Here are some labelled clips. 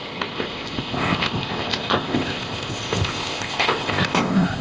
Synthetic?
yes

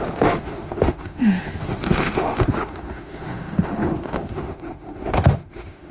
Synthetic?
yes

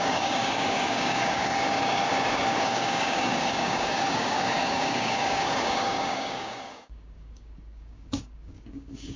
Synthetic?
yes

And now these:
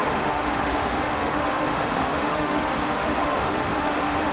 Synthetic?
yes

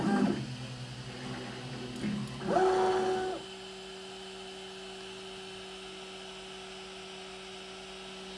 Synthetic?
no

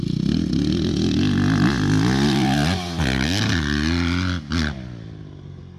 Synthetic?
no